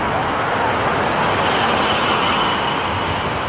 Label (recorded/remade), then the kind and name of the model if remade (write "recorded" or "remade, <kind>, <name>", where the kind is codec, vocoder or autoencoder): recorded